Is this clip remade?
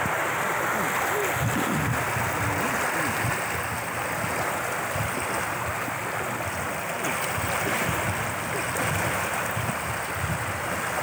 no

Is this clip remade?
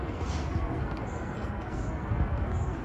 yes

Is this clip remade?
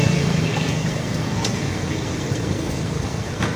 yes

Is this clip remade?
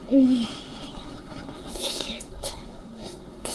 yes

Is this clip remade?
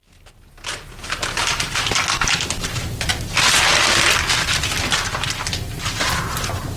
no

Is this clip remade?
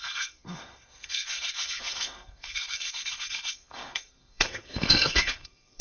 yes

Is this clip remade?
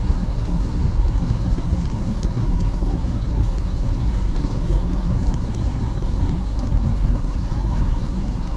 yes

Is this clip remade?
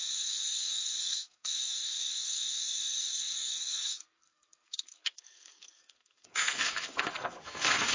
yes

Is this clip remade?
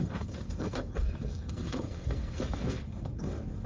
yes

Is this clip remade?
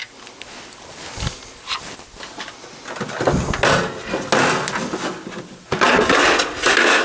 no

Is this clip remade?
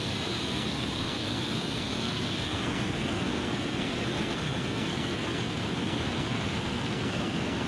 yes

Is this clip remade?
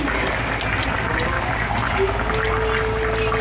no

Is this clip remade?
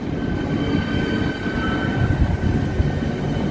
no